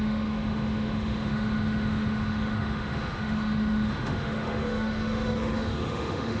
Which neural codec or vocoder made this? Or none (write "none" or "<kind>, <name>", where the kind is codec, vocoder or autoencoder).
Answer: autoencoder, DAC-VAE